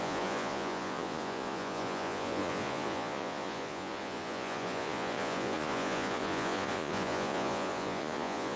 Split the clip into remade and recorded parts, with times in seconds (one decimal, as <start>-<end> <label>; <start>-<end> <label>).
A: 0.0-8.6 remade